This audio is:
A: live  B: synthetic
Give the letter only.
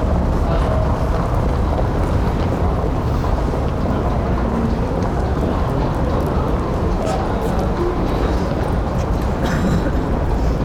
A